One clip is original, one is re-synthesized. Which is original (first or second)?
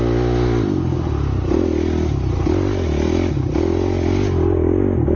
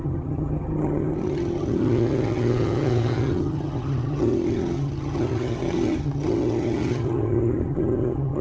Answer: first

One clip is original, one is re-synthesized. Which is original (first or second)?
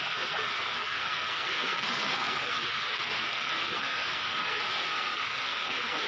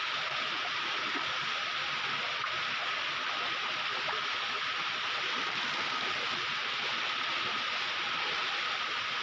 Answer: second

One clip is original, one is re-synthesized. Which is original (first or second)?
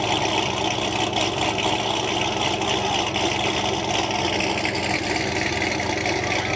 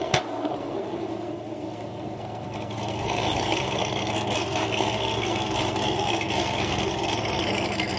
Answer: first